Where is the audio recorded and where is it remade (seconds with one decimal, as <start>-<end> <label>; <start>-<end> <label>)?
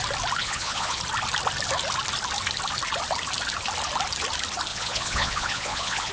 0.0-0.4 recorded; 0.4-1.0 remade; 1.0-4.7 recorded; 4.7-6.1 remade